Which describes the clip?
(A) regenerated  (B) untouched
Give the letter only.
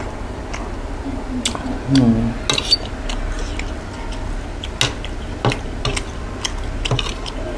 B